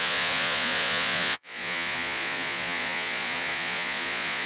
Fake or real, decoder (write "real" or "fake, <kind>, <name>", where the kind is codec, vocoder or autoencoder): fake, vocoder, Vocos